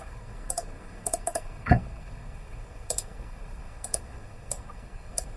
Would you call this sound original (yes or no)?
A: no